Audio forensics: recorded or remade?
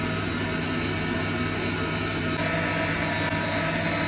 recorded